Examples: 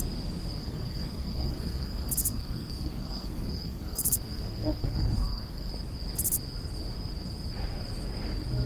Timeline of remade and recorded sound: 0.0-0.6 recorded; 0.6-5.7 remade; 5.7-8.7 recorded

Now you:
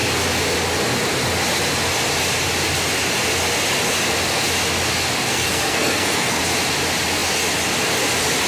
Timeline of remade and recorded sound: 0.0-5.3 recorded; 5.3-6.4 remade; 6.4-8.5 recorded

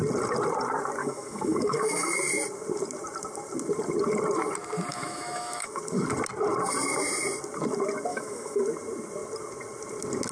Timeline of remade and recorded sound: 0.0-1.0 recorded; 1.0-2.1 remade; 2.1-4.9 recorded; 4.9-5.8 remade; 5.8-8.1 recorded; 8.1-8.6 remade; 8.6-10.3 recorded

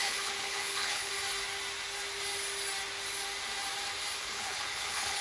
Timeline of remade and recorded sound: 0.0-1.1 remade; 1.1-4.2 recorded; 4.2-5.2 remade

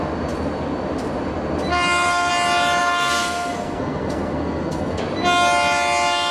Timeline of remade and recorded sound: 0.0-1.7 recorded; 1.7-2.3 remade; 2.3-2.8 recorded; 2.8-5.0 remade; 5.0-6.3 recorded

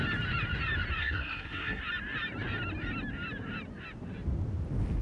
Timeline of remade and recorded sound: 0.0-1.0 recorded; 1.0-1.8 remade; 1.8-5.0 recorded

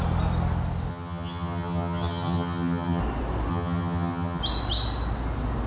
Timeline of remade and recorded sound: 0.0-0.9 recorded; 0.9-3.0 remade; 3.0-3.5 recorded; 3.5-4.4 remade; 4.4-5.7 recorded